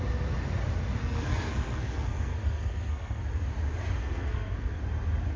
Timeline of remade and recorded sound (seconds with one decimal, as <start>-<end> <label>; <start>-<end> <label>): 0.0-1.0 recorded; 1.0-3.2 remade; 3.2-4.0 recorded; 4.0-4.8 remade; 4.8-5.4 recorded